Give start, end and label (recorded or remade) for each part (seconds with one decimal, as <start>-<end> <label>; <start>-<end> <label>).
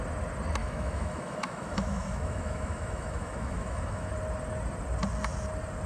0.0-0.6 recorded; 0.6-4.1 remade; 4.1-5.9 recorded